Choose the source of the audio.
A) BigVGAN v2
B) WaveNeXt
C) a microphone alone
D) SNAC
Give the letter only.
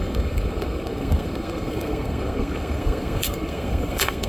D